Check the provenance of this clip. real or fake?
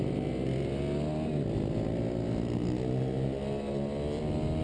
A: real